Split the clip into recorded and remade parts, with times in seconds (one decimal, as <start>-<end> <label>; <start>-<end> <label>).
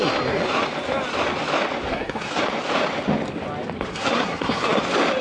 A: 0.0-1.9 recorded; 1.9-2.4 remade; 2.4-3.9 recorded; 3.9-4.8 remade; 4.8-5.2 recorded